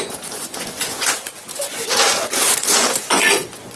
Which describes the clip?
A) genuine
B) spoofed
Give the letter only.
B